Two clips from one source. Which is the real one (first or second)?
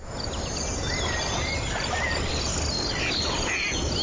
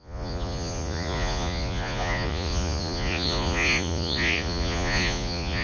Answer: first